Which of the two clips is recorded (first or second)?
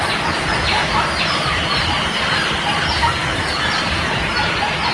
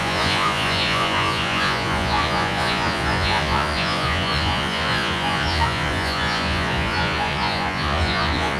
first